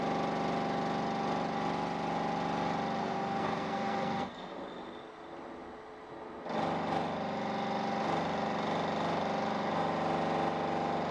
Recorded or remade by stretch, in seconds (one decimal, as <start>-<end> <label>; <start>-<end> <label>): 0.0-3.0 recorded; 3.0-4.6 remade; 4.6-11.1 recorded